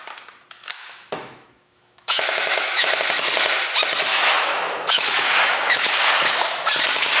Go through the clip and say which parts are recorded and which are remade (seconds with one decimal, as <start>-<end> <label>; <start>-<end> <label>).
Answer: 0.0-0.6 recorded; 0.6-3.0 remade; 3.0-4.1 recorded; 4.1-6.0 remade; 6.0-7.2 recorded